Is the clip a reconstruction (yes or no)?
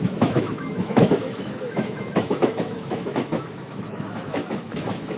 yes